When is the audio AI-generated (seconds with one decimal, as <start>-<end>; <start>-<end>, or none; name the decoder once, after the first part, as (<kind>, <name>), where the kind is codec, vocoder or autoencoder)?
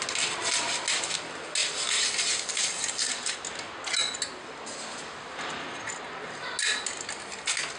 none